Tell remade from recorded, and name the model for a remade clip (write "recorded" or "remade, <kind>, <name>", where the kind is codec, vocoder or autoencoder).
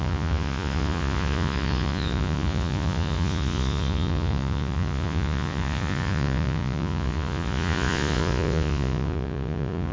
remade, vocoder, Vocos